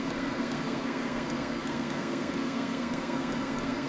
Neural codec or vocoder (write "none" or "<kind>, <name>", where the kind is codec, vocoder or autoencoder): codec, SNAC